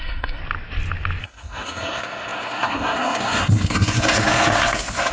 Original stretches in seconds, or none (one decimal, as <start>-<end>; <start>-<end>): 0.4-1.2